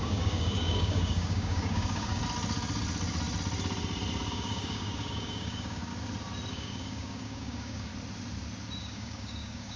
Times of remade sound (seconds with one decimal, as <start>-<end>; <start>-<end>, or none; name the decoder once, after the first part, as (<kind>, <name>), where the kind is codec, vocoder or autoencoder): 0.0-2.2 (codec, DAC); 4.3-5.9; 6.5-7.9; 8.8-9.8